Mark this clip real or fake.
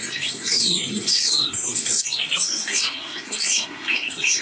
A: fake